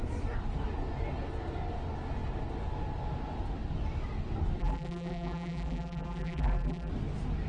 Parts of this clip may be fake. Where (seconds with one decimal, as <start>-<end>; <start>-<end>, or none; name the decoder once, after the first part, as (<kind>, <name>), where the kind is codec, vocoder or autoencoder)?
4.6-6.9 (vocoder, BigVGAN v2)

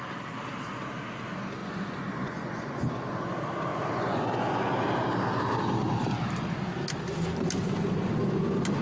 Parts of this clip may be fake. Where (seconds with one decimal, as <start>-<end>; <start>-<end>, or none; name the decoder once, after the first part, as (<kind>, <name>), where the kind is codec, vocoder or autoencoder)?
1.6-3.3 (vocoder, Vocos); 3.7-4.8

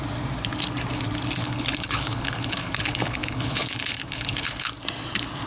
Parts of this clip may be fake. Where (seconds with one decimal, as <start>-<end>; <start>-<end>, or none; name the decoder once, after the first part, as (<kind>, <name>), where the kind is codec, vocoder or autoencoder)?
1.4-4.7 (codec, HILCodec)

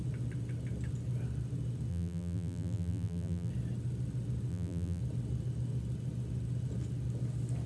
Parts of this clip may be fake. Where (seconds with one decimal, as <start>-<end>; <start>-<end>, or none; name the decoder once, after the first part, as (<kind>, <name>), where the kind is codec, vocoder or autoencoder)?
1.9-3.5 (vocoder, BigVGAN v2); 4.5-5.0

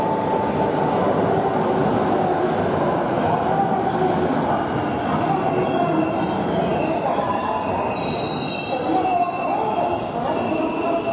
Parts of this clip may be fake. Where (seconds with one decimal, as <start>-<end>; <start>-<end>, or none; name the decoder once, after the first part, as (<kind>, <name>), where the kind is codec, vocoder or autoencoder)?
none

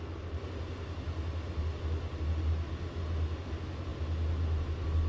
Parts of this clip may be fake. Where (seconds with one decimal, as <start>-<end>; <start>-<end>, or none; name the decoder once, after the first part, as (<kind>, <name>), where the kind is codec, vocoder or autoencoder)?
none

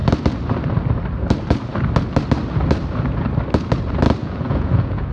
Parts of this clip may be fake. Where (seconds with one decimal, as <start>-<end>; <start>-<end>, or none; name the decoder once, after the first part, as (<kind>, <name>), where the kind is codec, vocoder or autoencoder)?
4.2-5.1 (vocoder, Vocos)

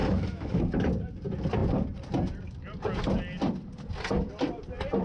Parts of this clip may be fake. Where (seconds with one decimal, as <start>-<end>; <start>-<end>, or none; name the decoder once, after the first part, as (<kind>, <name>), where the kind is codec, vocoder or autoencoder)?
0.0-0.6 (autoencoder, DAC-VAE)